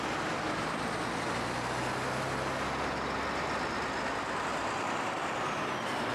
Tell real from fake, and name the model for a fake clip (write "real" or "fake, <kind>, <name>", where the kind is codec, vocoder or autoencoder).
real